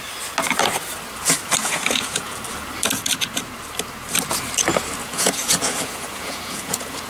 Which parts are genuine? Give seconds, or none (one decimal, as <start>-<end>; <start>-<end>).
0.0-1.6; 2.4-5.0